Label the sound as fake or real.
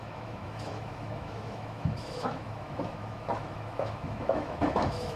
fake